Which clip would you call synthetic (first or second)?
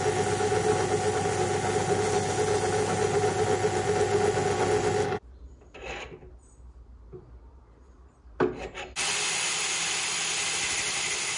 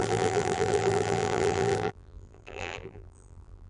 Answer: second